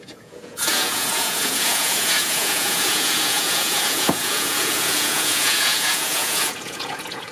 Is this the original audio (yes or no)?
no